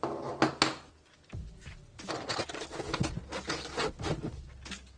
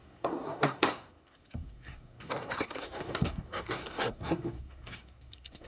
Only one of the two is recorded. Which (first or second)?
first